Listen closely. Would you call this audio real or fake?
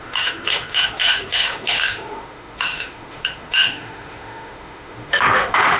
fake